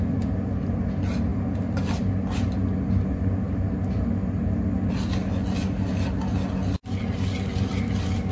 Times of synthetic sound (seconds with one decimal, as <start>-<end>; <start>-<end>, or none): none